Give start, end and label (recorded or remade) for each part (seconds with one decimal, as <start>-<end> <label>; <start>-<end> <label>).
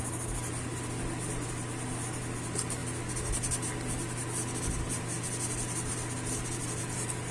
0.0-7.3 recorded